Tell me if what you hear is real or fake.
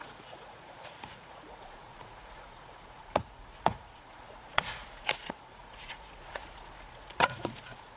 fake